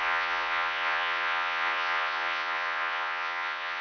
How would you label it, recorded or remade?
remade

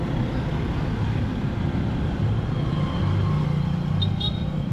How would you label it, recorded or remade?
recorded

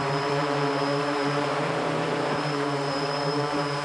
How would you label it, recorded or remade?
remade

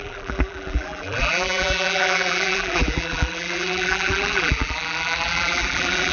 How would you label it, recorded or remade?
remade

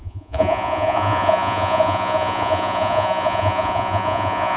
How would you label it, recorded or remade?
remade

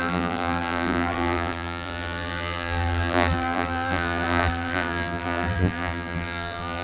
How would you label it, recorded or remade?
remade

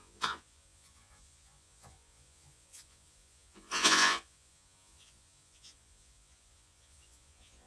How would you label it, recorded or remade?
remade